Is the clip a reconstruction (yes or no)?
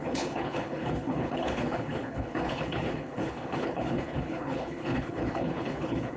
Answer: yes